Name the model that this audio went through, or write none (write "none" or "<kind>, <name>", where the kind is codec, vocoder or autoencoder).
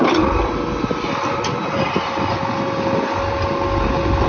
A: none